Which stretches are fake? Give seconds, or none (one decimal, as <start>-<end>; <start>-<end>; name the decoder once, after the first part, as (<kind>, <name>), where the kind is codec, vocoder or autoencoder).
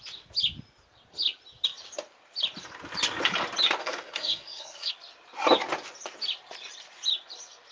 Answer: 3.8-4.9 (codec, SNAC)